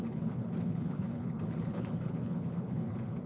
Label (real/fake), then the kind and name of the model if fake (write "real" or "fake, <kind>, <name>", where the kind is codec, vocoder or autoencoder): fake, codec, HILCodec